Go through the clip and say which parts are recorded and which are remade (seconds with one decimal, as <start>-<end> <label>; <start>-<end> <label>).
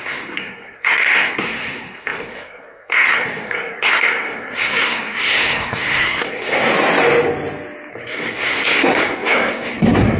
0.0-6.7 remade; 6.7-7.9 recorded; 7.9-10.2 remade